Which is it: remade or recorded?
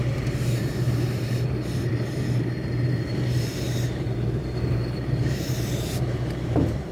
remade